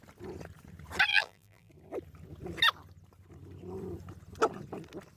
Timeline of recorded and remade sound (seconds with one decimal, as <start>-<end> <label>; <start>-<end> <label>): 0.0-1.1 recorded; 1.1-1.7 remade; 1.7-5.2 recorded